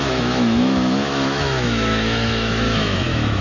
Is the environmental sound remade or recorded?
remade